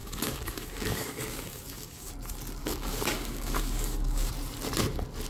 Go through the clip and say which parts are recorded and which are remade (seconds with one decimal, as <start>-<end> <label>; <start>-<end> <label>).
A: 0.0-2.1 remade; 2.1-2.6 recorded; 2.6-4.3 remade; 4.3-5.3 recorded